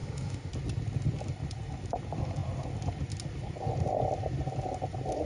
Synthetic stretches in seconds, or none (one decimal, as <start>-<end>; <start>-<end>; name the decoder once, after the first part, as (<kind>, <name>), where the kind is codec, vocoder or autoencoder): 0.0-0.5 (autoencoder, DAC-VAE)